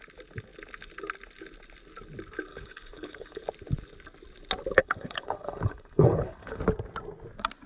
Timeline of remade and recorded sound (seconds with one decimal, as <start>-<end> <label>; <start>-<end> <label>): 0.0-2.5 recorded; 2.5-3.4 remade; 3.4-4.8 recorded; 4.8-6.6 remade; 6.6-7.7 recorded